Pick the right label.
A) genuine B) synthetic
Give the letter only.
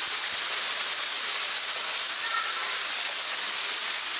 A